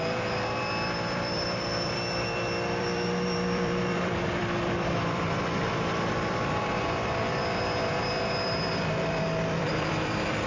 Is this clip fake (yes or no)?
yes